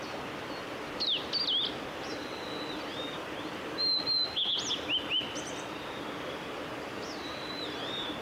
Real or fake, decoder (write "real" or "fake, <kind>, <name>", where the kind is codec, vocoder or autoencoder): real